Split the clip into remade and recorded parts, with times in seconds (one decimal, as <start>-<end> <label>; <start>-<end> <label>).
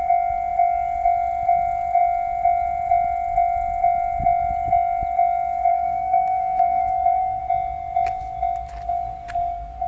0.0-5.7 recorded; 5.7-7.4 remade; 7.4-9.9 recorded